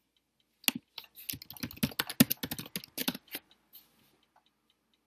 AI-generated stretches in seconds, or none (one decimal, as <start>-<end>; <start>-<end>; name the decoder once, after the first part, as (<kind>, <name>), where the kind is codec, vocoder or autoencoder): 3.0-5.1 (vocoder, BigVGAN v2)